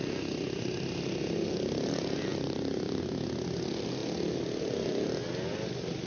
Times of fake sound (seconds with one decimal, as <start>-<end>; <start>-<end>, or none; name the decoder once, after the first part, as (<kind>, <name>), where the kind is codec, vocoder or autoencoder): none